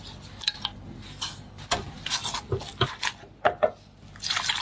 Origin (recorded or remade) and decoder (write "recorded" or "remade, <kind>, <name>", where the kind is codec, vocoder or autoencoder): recorded